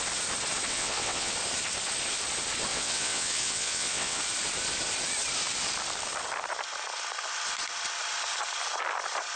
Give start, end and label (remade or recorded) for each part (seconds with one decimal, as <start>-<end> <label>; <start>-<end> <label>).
0.0-0.7 recorded; 0.7-1.3 remade; 1.3-2.7 recorded; 2.7-4.2 remade; 4.2-9.4 recorded